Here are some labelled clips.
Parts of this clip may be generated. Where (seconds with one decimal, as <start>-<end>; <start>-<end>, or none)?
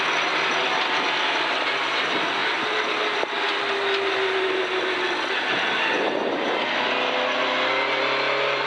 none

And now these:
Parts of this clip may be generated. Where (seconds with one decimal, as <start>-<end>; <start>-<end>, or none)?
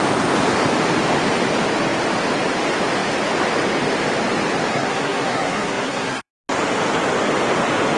4.7-6.3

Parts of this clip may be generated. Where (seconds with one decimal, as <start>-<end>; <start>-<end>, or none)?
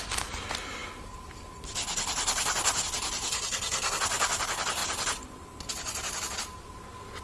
3.3-4.0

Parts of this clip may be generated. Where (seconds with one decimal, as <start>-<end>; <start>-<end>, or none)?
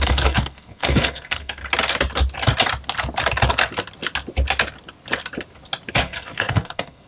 0.0-1.6; 5.9-7.1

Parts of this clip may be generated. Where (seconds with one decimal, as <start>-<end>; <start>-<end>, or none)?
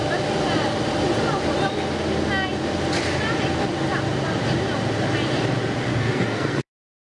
5.9-6.7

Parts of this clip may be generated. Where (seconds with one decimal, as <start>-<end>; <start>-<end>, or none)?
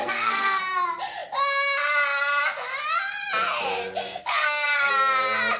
0.0-0.6; 4.0-4.9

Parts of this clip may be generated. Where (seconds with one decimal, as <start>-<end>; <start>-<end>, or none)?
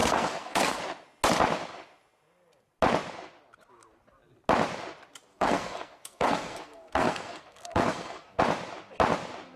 0.0-0.8; 5.3-8.4